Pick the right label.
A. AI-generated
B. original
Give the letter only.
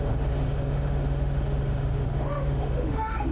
A